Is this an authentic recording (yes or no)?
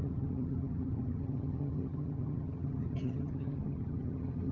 no